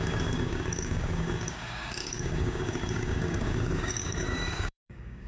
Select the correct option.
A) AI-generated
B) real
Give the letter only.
A